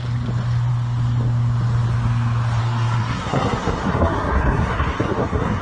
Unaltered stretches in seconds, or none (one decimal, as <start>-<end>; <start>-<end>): 0.0-2.6